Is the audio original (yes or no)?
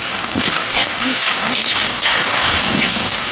no